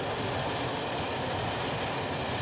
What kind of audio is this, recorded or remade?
recorded